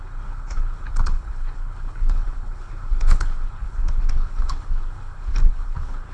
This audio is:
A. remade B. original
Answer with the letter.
A